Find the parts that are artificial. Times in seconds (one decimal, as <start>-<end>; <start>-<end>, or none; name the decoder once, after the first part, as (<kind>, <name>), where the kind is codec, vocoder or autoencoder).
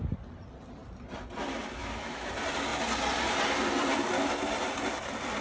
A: 1.8-2.3 (autoencoder, DAC-VAE)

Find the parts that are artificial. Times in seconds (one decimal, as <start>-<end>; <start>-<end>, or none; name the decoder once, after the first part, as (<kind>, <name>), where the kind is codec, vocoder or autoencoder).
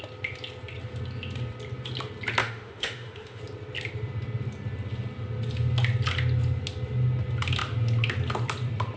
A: 2.4-3.4 (autoencoder, DAC-VAE)